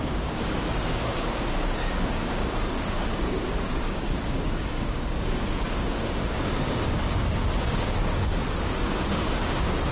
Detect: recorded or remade remade